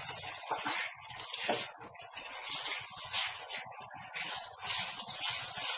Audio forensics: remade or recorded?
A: remade